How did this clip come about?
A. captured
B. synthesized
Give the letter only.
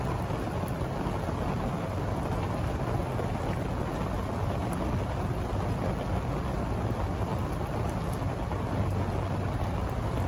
A